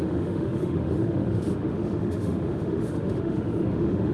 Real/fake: fake